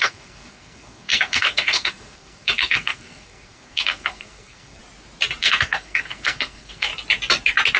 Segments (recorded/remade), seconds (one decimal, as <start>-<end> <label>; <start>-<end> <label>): 0.0-4.8 remade; 4.8-5.4 recorded; 5.4-6.9 remade; 6.9-7.8 recorded